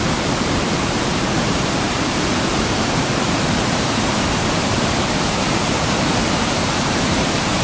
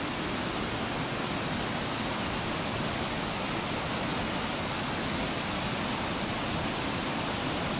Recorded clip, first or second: second